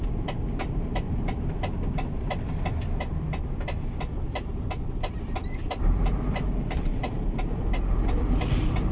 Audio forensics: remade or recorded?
remade